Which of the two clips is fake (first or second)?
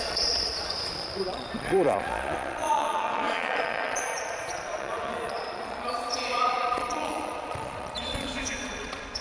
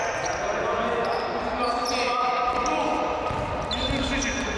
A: first